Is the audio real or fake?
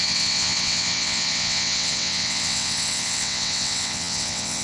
fake